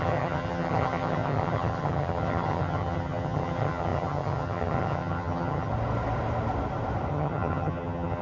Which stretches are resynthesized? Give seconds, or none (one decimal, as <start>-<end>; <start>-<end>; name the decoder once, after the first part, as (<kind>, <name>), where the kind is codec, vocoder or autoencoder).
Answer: 0.0-5.7 (vocoder, HiFi-GAN); 7.1-8.2